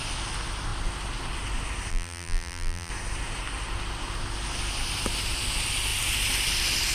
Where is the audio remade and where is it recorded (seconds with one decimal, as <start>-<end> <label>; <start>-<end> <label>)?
0.0-1.9 recorded; 1.9-2.9 remade; 2.9-6.9 recorded